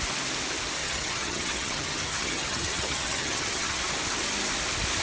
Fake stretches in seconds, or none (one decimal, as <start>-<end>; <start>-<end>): 0.8-3.8